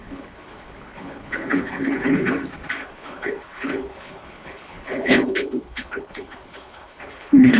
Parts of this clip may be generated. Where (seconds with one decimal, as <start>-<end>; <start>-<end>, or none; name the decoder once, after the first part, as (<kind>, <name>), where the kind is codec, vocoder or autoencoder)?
0.0-2.3 (codec, HILCodec); 2.8-7.6